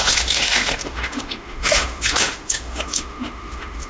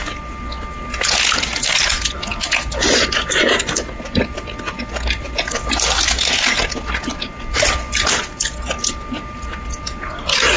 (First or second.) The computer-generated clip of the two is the first